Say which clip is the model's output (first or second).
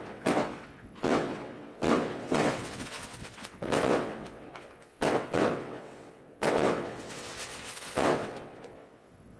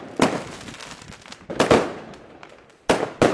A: first